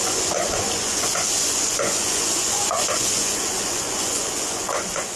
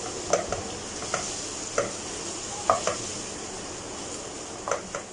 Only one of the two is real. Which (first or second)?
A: second